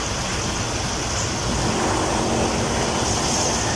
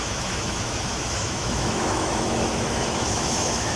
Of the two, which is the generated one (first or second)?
second